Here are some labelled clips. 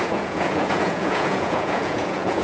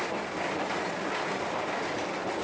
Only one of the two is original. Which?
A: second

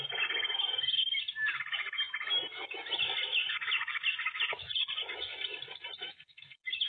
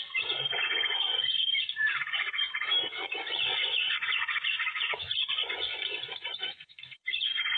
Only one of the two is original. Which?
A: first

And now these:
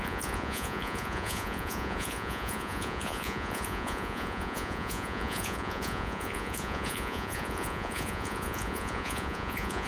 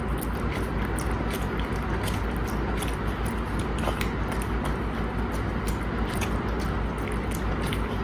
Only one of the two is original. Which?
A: second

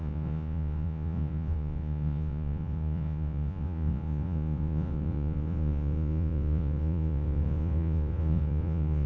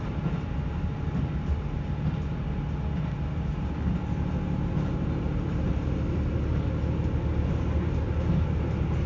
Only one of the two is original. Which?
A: second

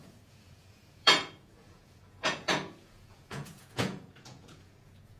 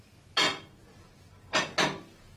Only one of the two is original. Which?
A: second